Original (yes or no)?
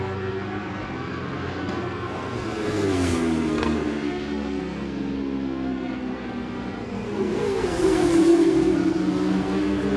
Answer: no